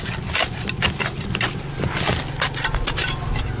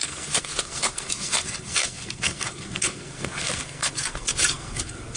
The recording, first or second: first